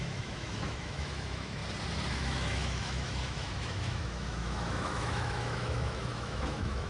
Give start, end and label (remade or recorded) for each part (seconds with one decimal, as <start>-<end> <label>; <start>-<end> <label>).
0.0-1.6 remade; 1.6-2.1 recorded; 2.1-6.9 remade